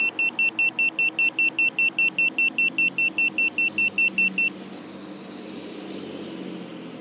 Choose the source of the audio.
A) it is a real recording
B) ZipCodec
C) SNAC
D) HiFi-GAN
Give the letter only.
A